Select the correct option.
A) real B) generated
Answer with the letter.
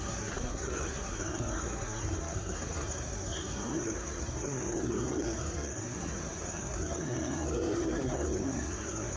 B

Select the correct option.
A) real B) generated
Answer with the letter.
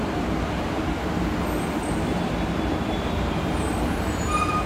B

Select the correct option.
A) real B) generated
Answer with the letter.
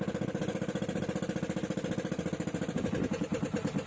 A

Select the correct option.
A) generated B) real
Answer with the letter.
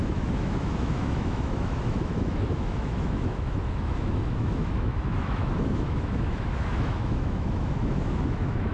A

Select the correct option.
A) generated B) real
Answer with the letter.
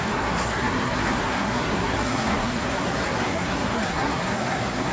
A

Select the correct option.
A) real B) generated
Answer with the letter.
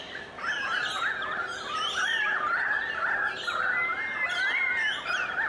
A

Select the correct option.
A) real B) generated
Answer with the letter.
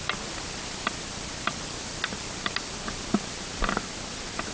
A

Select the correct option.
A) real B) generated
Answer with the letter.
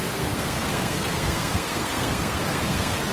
B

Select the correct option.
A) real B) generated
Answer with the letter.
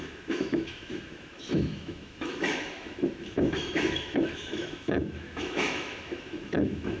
B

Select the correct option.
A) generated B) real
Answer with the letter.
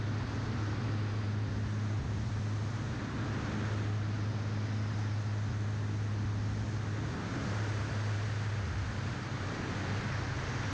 B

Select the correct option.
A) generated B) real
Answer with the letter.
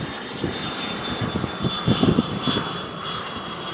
B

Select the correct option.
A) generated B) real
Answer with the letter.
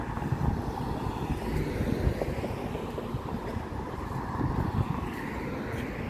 B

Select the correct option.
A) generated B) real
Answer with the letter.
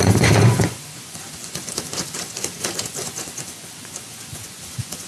A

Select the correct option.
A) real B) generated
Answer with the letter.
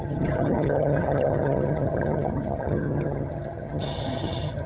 B